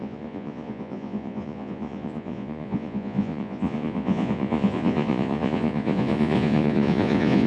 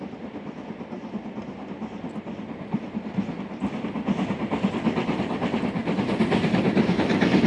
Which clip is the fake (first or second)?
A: first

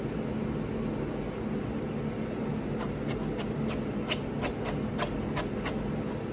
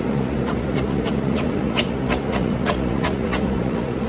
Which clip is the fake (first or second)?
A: second